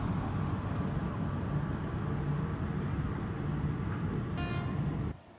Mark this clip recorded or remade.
recorded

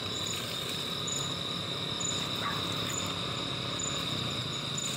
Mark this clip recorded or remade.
recorded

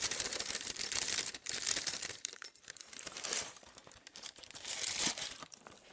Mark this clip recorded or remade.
remade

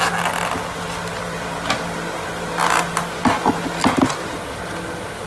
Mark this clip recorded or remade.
recorded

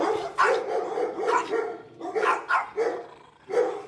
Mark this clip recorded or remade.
remade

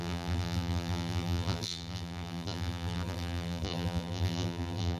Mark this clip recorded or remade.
remade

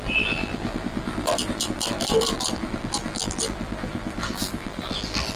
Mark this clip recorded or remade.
remade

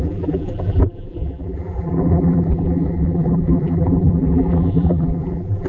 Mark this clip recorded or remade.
remade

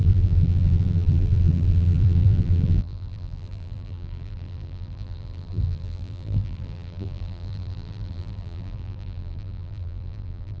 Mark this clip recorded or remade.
remade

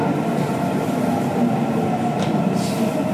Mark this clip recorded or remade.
remade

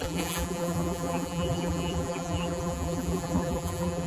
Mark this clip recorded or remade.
remade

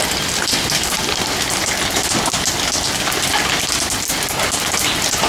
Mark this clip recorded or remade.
recorded